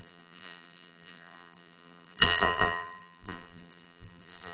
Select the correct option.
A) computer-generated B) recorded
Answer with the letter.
A